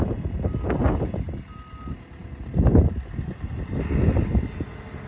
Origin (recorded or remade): recorded